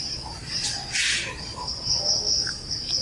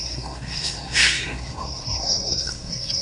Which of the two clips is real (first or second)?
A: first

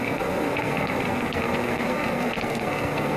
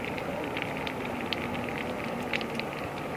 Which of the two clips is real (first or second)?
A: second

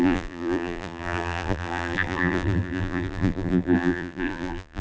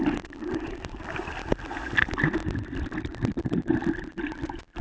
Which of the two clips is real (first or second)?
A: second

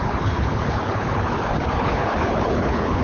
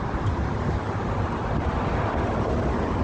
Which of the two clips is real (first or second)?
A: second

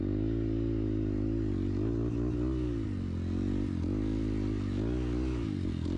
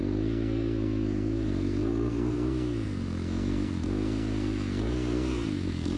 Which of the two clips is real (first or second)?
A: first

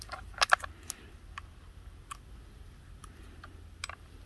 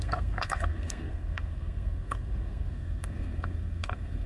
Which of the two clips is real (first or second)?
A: first